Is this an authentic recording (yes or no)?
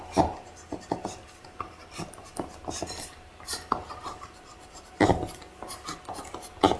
yes